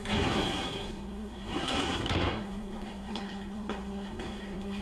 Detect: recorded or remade remade